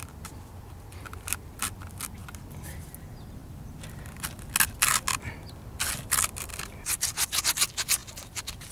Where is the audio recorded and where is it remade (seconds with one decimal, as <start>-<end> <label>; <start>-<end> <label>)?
0.0-6.5 recorded; 6.5-7.4 remade; 7.4-8.7 recorded